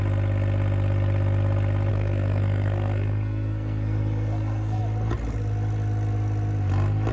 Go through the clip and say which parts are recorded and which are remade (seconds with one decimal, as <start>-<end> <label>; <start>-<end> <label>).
0.0-1.9 recorded; 1.9-4.8 remade; 4.8-7.1 recorded